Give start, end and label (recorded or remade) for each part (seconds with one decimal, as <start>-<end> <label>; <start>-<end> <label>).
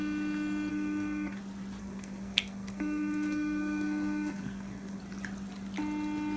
0.0-0.7 recorded; 0.7-1.4 remade; 1.4-1.8 recorded; 1.8-5.0 remade; 5.0-6.4 recorded